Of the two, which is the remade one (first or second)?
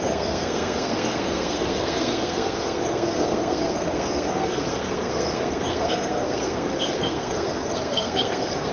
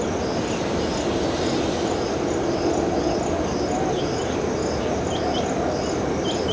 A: first